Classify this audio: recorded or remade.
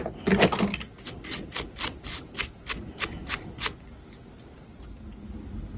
recorded